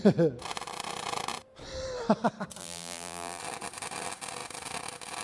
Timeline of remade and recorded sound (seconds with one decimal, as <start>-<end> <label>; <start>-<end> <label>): 0.0-2.6 recorded; 2.6-3.4 remade; 3.4-5.2 recorded